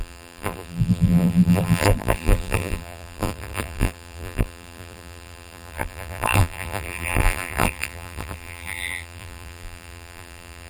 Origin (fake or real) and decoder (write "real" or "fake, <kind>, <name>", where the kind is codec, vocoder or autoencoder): fake, vocoder, BigVGAN v2